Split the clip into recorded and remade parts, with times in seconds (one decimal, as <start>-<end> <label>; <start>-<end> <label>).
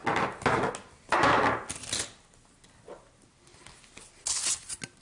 0.0-5.0 recorded